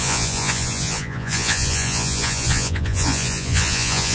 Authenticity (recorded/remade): remade